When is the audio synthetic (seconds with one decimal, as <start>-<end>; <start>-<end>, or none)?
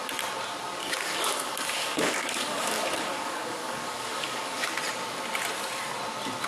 0.8-4.7